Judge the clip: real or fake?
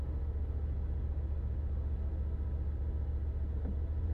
real